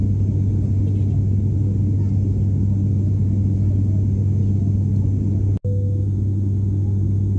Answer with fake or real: real